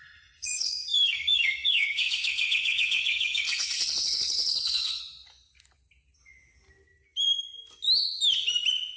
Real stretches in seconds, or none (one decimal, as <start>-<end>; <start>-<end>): 0.0-0.4; 5.0-9.0